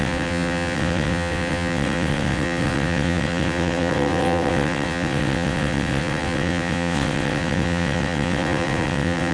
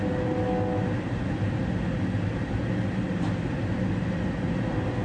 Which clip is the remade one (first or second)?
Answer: first